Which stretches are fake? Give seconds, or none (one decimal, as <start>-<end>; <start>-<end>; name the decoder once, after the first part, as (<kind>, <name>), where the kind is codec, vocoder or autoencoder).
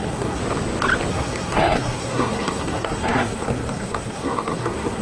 0.0-0.4 (codec, SNAC); 1.1-5.0